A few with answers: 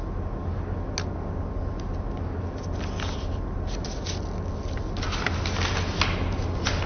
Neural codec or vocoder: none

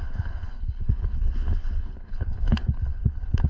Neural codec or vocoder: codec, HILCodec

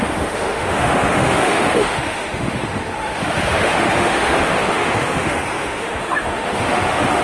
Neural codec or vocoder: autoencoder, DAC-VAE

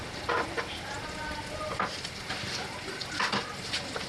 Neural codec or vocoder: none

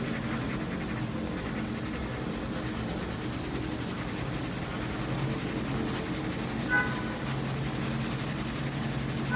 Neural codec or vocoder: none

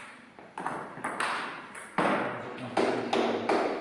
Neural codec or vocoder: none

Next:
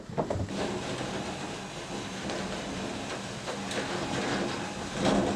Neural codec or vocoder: none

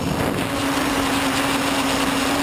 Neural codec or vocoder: none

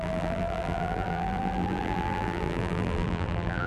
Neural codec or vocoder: vocoder, BigVGAN v2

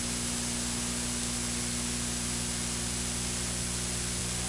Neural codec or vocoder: none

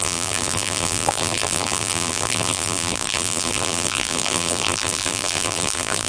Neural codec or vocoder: vocoder, BigVGAN v2